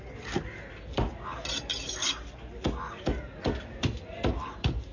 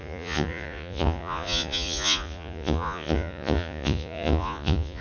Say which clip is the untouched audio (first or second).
first